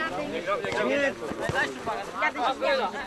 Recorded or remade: recorded